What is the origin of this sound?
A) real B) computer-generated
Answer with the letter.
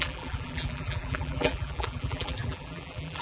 B